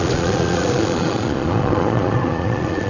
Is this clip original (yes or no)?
no